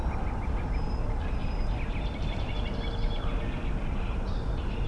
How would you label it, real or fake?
fake